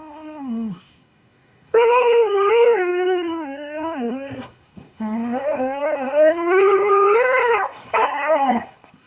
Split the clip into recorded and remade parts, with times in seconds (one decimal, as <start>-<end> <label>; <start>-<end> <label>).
0.0-9.1 remade